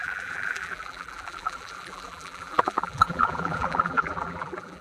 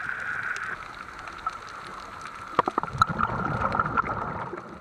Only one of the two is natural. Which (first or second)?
second